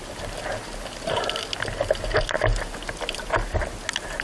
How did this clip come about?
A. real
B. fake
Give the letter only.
A